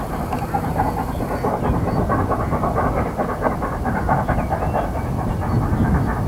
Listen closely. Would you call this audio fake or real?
real